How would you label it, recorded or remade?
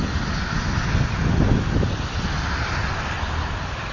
recorded